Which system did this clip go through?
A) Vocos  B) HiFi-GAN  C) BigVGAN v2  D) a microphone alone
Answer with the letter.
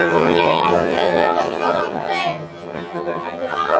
B